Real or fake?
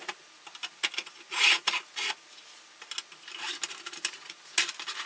real